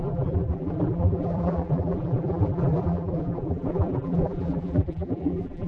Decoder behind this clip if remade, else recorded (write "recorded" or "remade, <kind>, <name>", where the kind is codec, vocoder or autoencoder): remade, vocoder, BigVGAN v2